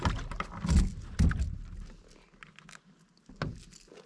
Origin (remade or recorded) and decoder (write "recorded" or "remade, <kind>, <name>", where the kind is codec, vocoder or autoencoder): recorded